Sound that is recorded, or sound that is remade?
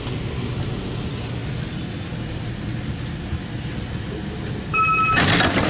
recorded